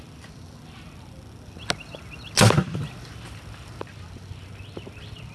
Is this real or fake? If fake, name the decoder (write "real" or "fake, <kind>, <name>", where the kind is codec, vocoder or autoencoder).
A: real